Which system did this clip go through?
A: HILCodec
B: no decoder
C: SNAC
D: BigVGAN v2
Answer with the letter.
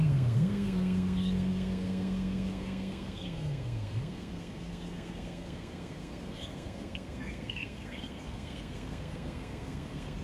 C